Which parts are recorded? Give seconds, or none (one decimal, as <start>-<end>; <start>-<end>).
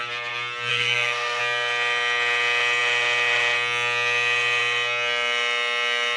0.0-0.7; 1.4-6.2